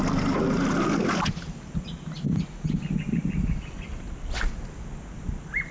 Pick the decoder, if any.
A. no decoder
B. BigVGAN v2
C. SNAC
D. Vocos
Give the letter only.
A